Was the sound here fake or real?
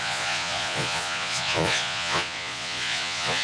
fake